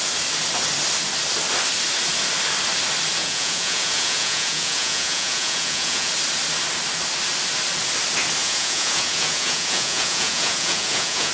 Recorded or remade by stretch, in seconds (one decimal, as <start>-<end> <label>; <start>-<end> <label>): 0.0-3.2 recorded; 3.2-6.1 remade; 6.1-8.4 recorded; 8.4-11.3 remade